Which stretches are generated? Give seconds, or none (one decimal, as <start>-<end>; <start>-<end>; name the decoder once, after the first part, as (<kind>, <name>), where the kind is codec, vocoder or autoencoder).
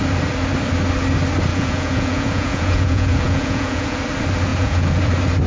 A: 1.5-4.0 (vocoder, Vocos); 4.5-5.0